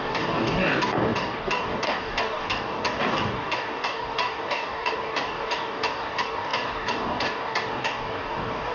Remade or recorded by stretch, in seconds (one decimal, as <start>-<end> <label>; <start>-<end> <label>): 0.0-8.7 remade